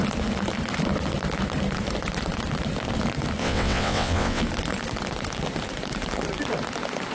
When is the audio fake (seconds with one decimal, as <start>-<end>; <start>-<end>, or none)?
3.4-4.4